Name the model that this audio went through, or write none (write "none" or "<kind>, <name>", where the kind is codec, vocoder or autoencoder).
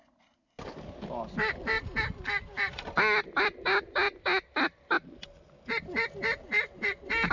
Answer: none